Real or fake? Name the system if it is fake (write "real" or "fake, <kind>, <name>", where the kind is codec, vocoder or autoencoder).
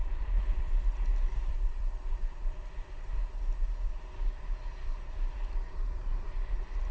fake, vocoder, BigVGAN v2